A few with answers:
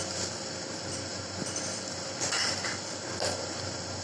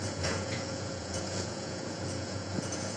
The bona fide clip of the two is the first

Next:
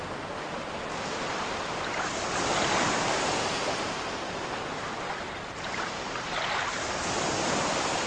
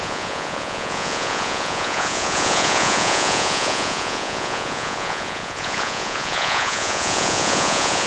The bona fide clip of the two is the first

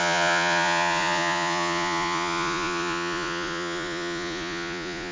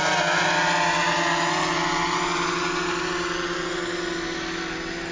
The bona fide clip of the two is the second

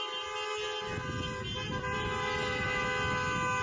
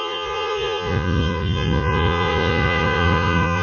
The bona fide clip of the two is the first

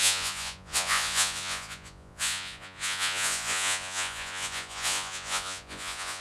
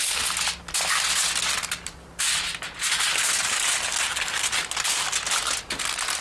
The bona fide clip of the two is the second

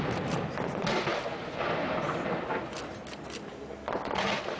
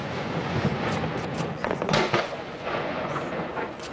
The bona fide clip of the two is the first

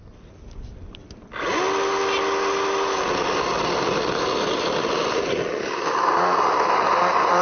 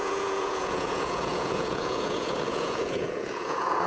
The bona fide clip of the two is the first